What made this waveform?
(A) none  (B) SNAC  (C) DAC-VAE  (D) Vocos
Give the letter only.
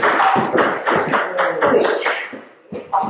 A